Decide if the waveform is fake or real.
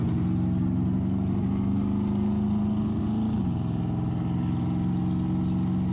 real